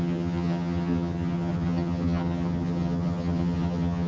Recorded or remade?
remade